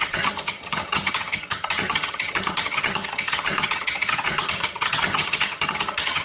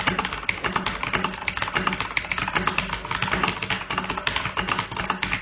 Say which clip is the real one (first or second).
second